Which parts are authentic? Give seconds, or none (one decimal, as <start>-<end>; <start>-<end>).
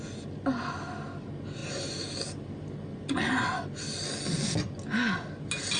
0.0-5.8